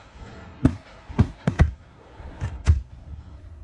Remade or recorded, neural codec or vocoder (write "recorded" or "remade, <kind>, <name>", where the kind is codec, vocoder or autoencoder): remade, codec, SNAC